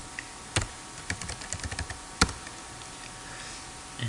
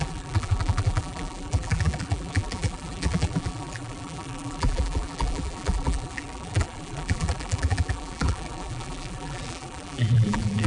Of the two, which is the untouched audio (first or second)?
first